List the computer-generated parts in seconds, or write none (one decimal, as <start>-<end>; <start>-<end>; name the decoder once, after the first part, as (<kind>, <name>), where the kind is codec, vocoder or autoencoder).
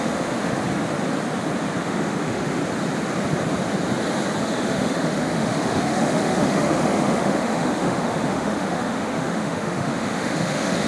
0.0-0.6 (autoencoder, DAC-VAE); 1.8-2.6; 4.4-10.9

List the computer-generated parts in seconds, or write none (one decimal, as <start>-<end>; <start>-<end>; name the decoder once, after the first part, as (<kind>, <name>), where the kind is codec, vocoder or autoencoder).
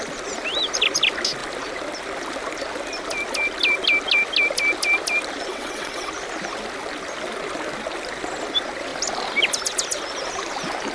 5.5-6.1 (vocoder, WaveNeXt)